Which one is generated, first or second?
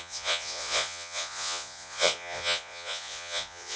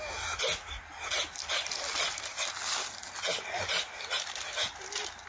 first